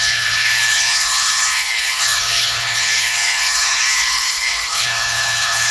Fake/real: fake